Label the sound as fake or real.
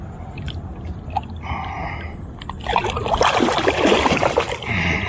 real